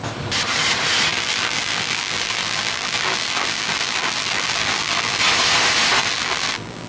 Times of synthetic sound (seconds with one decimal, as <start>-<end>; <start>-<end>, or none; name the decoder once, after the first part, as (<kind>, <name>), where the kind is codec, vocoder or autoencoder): 1.1-5.2 (vocoder, BigVGAN v2); 6.0-6.9